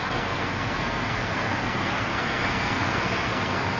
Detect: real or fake fake